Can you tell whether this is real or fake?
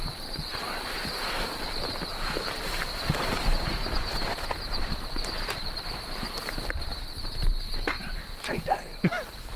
fake